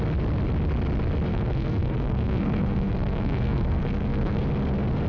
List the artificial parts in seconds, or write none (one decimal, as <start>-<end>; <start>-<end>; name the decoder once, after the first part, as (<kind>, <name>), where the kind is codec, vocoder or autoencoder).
1.3-4.4 (codec, SNAC)